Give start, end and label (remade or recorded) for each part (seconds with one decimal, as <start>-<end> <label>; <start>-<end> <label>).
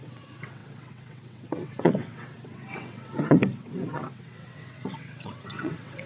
0.0-6.1 remade